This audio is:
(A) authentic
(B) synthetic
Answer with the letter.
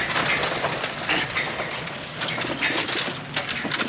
A